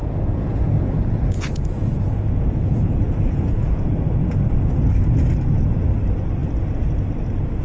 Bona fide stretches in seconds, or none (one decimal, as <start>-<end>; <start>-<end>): 3.9-7.6